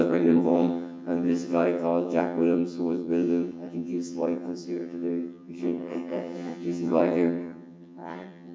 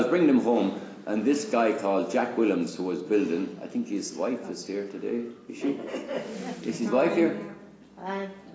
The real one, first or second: second